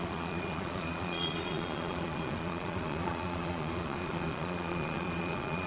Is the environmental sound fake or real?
fake